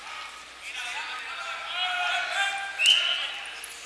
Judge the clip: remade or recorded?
recorded